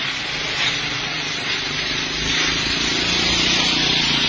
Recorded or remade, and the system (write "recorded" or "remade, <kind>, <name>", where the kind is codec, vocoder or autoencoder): recorded